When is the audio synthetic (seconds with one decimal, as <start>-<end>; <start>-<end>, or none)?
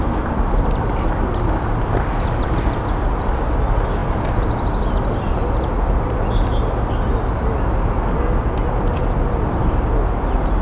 none